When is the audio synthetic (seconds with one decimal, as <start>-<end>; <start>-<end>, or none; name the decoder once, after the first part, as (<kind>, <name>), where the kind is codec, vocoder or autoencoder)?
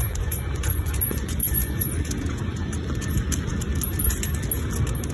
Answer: 0.0-3.1 (vocoder, Vocos)